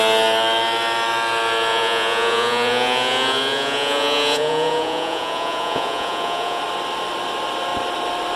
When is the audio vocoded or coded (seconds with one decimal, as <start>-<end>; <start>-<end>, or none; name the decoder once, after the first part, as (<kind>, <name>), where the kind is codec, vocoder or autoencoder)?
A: 1.7-6.6 (vocoder, Vocos)